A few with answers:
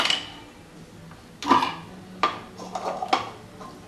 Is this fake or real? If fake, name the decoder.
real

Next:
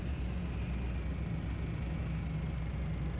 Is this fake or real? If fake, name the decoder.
real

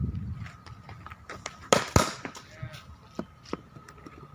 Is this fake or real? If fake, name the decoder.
real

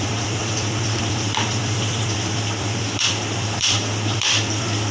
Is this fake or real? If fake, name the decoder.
fake, vocoder, BigVGAN v2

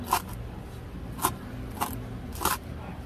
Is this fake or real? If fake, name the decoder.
real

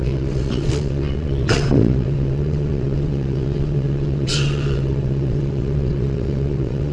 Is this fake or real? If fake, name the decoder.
fake, vocoder, WaveNeXt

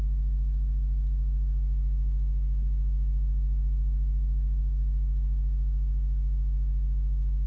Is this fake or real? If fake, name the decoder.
fake, autoencoder, DAC-VAE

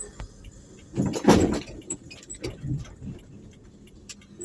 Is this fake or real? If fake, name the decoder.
real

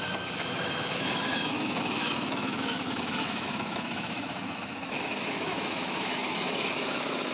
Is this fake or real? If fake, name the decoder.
fake, autoencoder, DAC-VAE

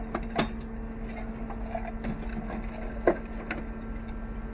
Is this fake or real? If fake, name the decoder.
real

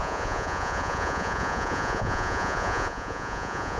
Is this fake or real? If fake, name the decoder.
fake, vocoder, Vocos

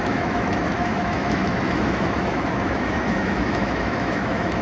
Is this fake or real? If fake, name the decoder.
fake, autoencoder, DAC-VAE